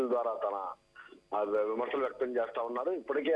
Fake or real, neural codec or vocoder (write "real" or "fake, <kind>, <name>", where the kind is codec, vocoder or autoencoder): real